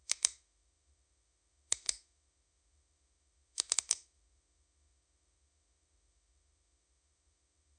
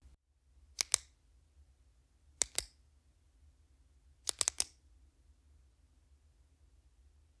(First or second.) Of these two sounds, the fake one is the first